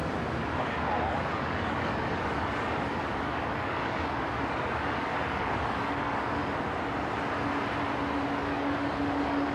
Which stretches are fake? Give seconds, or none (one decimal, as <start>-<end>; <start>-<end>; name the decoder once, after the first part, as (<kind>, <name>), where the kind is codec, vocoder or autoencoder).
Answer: 0.6-6.4 (codec, DAC); 8.3-9.5